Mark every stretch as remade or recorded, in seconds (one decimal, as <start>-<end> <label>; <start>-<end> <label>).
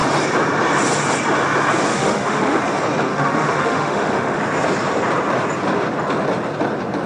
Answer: 0.0-1.9 recorded; 1.9-2.6 remade; 2.6-3.1 recorded; 3.1-4.4 remade; 4.4-7.1 recorded